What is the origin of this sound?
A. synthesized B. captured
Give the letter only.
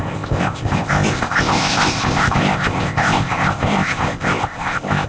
A